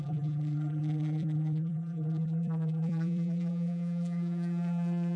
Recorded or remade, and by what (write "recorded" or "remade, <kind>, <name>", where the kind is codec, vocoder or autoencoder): remade, vocoder, BigVGAN v2